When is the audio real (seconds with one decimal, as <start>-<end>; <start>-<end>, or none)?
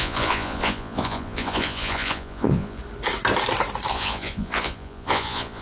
2.8-3.9